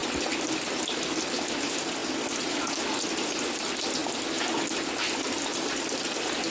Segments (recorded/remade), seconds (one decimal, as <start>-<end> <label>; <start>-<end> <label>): 0.0-6.5 recorded